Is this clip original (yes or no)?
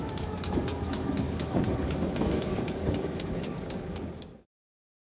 no